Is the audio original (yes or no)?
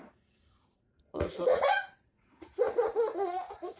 no